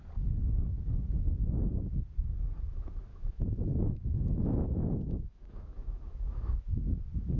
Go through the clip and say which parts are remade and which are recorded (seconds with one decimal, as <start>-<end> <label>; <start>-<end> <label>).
0.0-1.4 recorded; 1.4-1.9 remade; 1.9-3.1 recorded; 3.1-6.7 remade; 6.7-7.4 recorded